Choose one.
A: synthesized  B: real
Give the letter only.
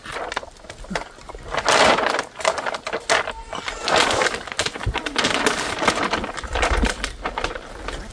B